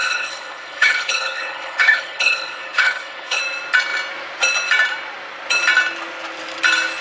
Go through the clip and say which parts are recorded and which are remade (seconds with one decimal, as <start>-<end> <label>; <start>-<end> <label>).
0.0-3.4 remade; 3.4-7.0 recorded